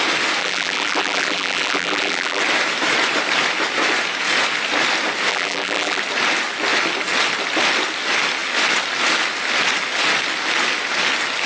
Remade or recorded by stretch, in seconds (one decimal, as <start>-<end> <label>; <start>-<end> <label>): 0.0-0.4 recorded; 0.4-2.4 remade; 2.4-5.3 recorded; 5.3-6.0 remade; 6.0-11.5 recorded